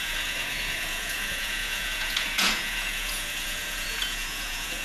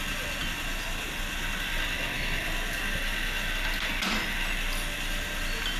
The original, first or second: second